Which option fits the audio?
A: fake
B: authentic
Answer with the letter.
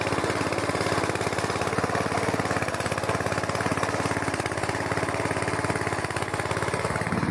B